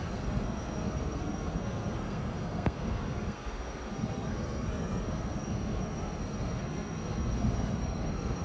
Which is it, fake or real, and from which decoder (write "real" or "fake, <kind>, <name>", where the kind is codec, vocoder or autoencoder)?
fake, codec, SNAC